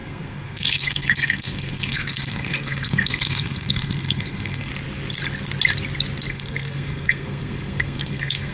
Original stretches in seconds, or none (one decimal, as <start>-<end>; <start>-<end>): 4.7-6.3